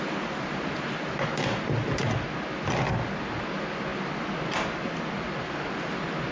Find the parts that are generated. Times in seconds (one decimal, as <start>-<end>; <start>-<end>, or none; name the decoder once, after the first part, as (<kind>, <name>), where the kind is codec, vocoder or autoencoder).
none